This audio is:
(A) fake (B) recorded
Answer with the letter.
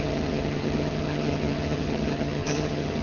A